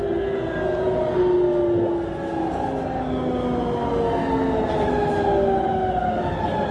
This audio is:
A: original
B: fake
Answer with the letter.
A